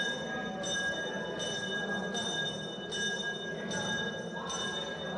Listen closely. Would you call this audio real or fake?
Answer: real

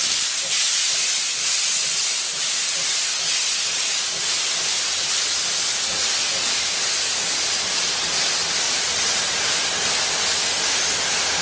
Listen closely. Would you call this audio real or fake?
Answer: real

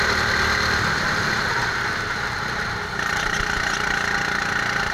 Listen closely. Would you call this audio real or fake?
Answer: real